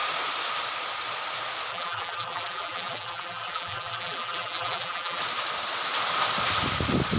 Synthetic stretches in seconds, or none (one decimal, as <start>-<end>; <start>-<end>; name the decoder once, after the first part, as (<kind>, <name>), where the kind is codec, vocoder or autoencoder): 1.7-5.2 (vocoder, BigVGAN v2)